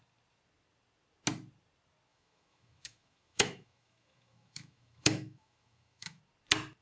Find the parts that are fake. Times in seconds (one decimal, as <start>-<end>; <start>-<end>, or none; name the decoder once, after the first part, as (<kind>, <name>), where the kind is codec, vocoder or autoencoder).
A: 2.1-6.2 (autoencoder, DAC-VAE)